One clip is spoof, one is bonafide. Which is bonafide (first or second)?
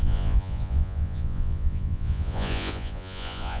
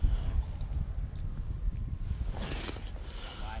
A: second